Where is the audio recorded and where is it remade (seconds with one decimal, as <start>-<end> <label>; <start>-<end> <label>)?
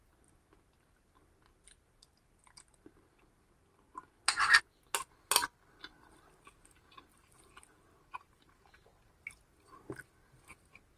0.0-11.0 recorded